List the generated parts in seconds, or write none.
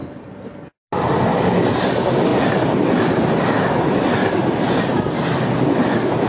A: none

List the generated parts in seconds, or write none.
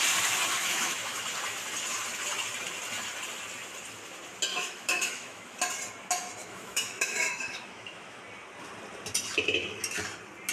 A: 0.6-1.2 (autoencoder, DAC-VAE); 4.5-5.6; 6.4-8.2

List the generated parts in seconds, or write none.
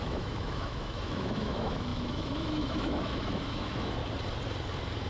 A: 0.0-4.0 (autoencoder, DAC-VAE)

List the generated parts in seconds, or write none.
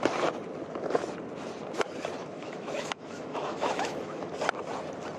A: 2.2-4.3 (autoencoder, DAC-VAE)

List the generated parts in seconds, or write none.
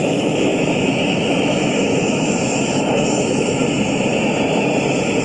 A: 0.0-3.6 (autoencoder, DAC-VAE)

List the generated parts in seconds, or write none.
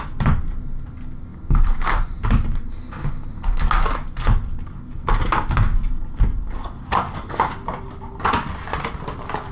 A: none